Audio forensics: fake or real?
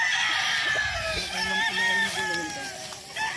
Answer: real